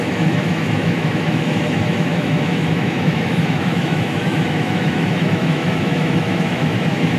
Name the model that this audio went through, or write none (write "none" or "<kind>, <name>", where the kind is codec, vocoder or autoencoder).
autoencoder, DAC-VAE